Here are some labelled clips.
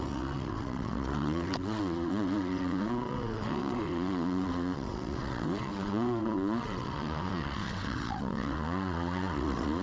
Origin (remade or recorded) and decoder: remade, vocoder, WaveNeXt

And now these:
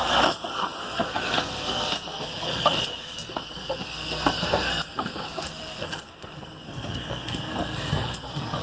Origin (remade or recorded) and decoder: remade, codec, SNAC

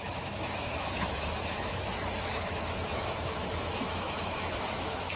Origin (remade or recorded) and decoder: remade, autoencoder, DAC-VAE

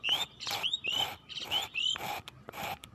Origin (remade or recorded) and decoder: remade, vocoder, BigVGAN v2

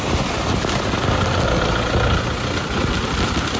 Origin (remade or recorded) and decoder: recorded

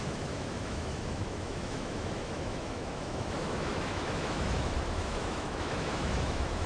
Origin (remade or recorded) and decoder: remade, autoencoder, DAC-VAE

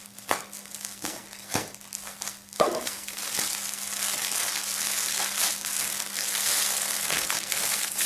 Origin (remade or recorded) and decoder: remade, codec, SNAC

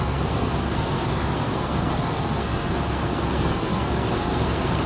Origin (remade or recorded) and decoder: remade, codec, SNAC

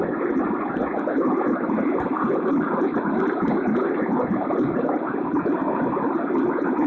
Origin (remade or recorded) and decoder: recorded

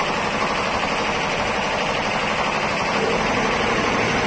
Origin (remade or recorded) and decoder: recorded